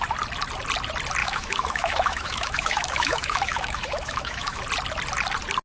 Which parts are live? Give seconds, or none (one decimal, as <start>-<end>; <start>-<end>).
0.0-1.2; 4.6-5.6